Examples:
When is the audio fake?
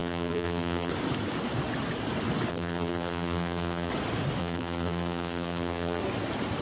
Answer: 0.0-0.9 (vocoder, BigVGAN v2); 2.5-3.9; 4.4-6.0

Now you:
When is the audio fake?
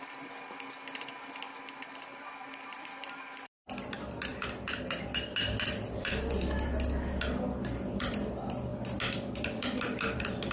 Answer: 0.0-4.3 (vocoder, BigVGAN v2); 8.1-8.7; 9.5-10.5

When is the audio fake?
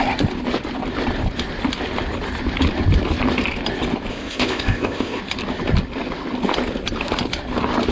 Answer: 4.1-5.2 (codec, ZipCodec)